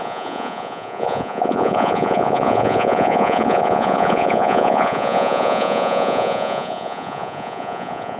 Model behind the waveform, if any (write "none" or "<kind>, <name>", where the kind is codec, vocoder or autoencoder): vocoder, Vocos